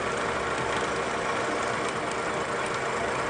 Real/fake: real